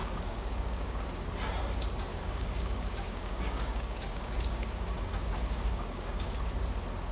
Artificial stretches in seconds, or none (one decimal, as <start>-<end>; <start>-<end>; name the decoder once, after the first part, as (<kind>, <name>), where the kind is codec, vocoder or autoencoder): 0.0-1.0 (codec, DAC); 2.1-6.4